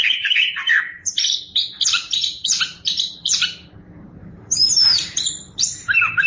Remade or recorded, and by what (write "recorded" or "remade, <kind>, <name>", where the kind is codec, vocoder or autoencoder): remade, vocoder, BigVGAN v2